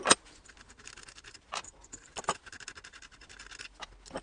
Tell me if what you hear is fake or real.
real